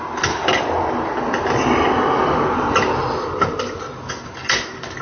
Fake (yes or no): no